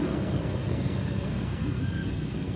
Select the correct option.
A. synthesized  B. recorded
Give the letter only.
A